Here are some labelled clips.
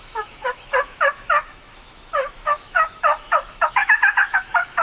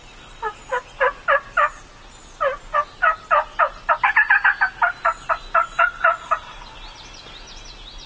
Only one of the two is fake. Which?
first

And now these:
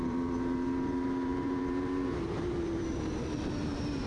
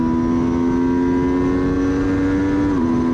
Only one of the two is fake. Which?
first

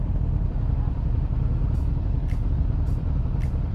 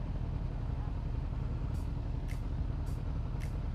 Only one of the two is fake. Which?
first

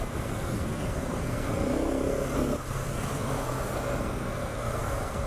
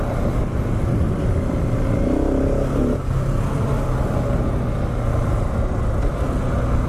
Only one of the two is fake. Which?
first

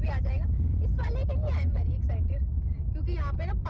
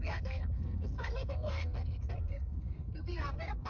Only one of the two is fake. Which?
second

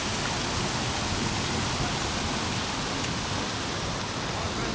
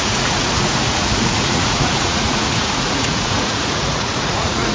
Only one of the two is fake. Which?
second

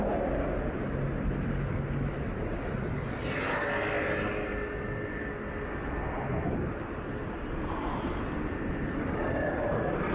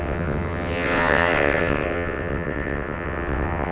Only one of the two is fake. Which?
second